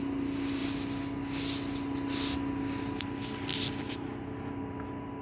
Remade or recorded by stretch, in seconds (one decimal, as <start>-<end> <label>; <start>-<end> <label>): 0.0-5.2 recorded